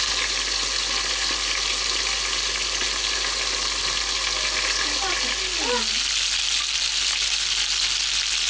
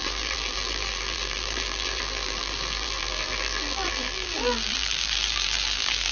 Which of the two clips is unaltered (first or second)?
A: first